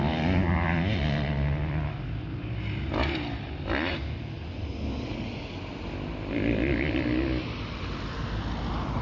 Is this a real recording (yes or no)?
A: yes